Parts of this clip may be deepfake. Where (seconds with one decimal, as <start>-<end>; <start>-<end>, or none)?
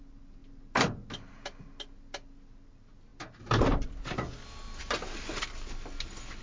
none